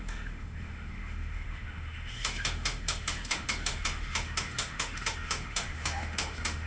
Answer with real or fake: fake